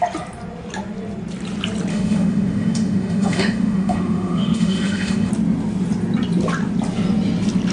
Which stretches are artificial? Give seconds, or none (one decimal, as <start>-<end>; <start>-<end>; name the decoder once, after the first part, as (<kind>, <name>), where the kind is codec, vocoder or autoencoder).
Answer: 1.9-5.3 (autoencoder, DAC-VAE)